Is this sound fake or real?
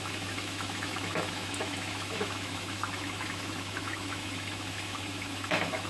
fake